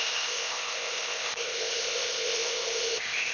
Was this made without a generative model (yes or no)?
no